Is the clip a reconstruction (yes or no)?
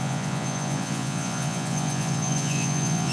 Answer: yes